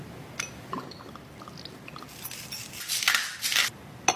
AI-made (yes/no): no